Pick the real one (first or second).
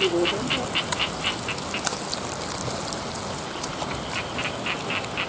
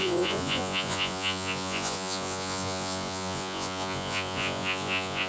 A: first